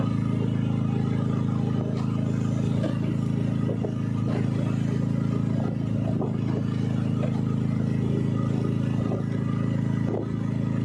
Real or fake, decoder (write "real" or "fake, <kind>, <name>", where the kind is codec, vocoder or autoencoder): real